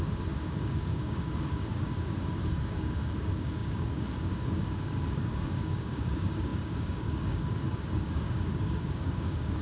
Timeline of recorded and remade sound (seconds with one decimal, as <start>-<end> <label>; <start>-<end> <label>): 0.0-9.6 remade